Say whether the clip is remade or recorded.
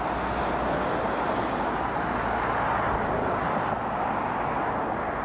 recorded